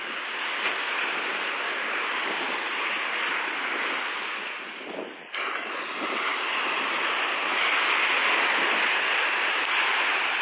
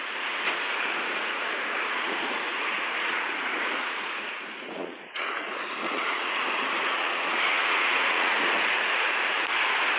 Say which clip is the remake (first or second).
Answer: second